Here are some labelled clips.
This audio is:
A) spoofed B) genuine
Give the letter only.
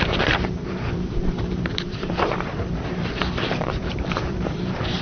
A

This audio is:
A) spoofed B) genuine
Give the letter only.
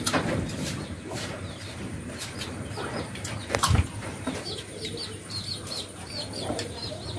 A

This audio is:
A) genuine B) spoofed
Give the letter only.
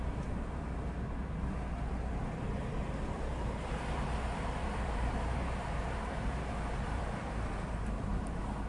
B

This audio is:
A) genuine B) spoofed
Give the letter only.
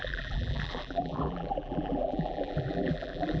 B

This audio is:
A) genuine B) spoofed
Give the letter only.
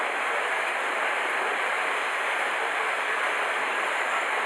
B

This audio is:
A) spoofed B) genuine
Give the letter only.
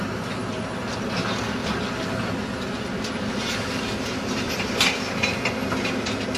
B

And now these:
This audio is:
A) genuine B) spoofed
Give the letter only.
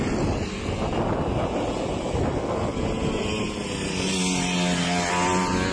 A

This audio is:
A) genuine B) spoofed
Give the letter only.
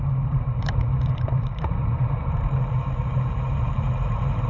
B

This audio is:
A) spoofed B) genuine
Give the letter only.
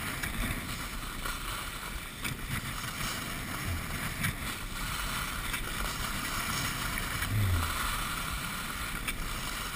B